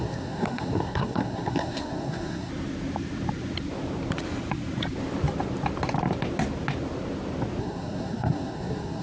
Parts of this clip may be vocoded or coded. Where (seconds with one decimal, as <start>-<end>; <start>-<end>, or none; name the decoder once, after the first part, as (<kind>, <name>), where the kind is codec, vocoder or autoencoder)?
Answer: 0.0-2.5 (codec, SNAC); 7.6-9.0